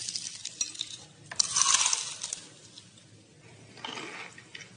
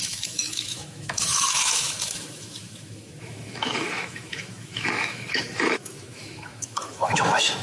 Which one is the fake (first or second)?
second